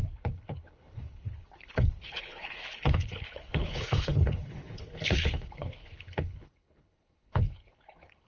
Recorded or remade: remade